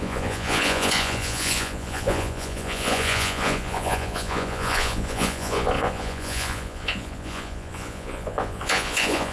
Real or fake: fake